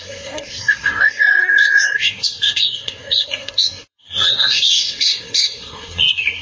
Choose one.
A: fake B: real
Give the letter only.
A